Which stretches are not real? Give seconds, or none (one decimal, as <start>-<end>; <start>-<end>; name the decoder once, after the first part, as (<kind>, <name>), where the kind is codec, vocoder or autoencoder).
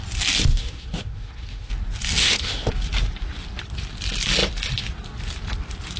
0.5-1.7 (autoencoder, DAC-VAE); 2.2-2.7